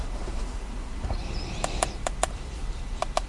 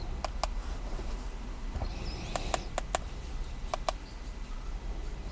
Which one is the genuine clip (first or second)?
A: second